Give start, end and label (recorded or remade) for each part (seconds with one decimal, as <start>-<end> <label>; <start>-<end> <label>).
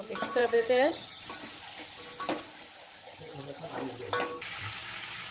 0.0-0.4 recorded; 0.4-1.2 remade; 1.2-3.0 recorded; 3.0-3.7 remade; 3.7-5.3 recorded